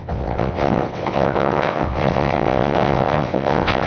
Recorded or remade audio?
remade